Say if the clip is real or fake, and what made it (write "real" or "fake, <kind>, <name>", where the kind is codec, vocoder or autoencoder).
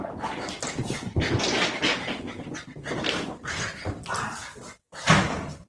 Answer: real